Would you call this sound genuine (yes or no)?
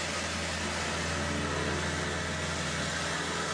yes